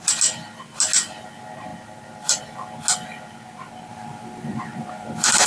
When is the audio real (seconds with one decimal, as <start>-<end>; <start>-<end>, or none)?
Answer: 0.0-1.7; 2.4-3.9